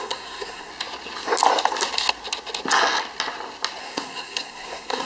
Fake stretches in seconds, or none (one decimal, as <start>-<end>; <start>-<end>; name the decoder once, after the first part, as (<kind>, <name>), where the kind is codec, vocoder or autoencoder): 0.0-0.7 (codec, SNAC); 3.8-5.1